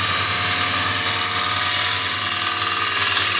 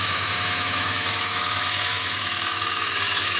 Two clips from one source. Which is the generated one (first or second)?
second